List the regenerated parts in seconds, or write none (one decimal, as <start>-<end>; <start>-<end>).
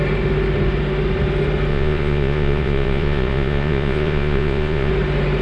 1.7-4.9